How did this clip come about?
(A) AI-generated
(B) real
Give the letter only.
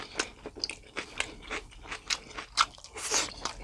B